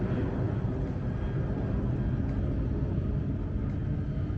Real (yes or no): yes